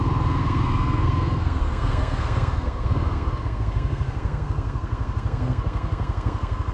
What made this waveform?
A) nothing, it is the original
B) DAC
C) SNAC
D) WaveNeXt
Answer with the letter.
C